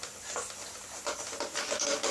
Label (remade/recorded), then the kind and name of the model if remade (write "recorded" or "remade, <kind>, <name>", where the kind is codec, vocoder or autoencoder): recorded